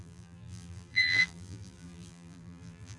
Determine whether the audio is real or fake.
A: fake